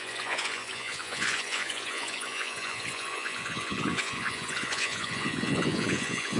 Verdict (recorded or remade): remade